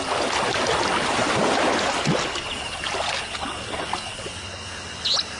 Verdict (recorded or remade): recorded